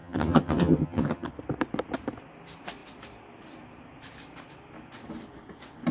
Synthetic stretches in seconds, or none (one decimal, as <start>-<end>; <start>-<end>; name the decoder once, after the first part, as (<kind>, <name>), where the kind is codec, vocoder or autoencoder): 0.0-1.3 (vocoder, HiFi-GAN)